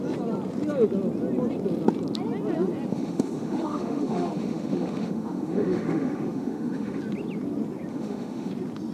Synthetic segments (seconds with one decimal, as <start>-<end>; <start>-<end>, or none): 2.9-7.0; 7.9-8.5